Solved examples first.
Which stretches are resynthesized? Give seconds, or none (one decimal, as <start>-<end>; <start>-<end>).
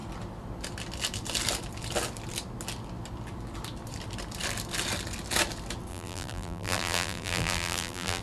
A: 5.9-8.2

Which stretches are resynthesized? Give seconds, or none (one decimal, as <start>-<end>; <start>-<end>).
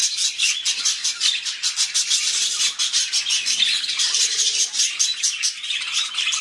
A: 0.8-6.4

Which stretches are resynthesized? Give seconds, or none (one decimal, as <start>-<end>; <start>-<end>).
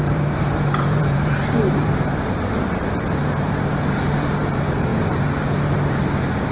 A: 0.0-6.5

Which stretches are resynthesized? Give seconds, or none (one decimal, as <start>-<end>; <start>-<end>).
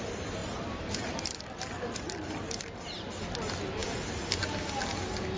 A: 0.4-3.1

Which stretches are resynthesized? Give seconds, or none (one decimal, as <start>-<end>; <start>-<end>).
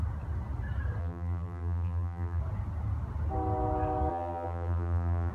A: 1.0-2.4; 4.1-5.3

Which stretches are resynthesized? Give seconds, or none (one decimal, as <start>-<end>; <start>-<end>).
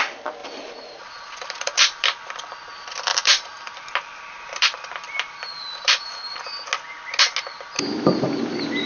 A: 0.4-2.5; 3.1-6.4